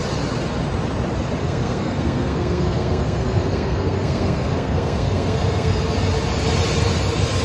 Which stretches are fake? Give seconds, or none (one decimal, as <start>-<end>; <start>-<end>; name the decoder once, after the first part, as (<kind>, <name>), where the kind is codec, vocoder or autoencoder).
1.4-5.8 (codec, SNAC)